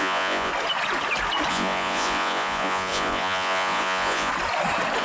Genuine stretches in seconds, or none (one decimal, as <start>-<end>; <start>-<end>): 0.5-1.5; 4.3-5.0